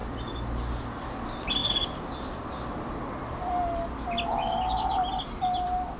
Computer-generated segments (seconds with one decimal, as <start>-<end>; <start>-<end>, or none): 0.0-6.0